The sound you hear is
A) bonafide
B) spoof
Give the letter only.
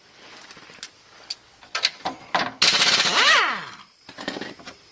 A